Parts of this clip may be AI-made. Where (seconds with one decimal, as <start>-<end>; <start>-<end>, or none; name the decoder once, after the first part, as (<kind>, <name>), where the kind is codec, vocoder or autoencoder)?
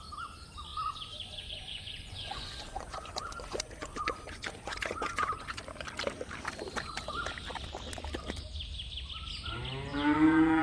0.7-5.6 (vocoder, Vocos); 9.9-10.6